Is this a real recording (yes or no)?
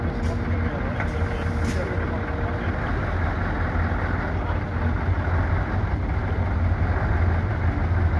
yes